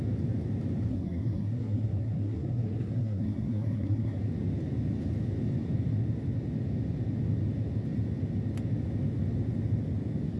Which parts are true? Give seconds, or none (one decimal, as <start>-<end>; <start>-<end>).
0.0-0.9; 4.2-10.4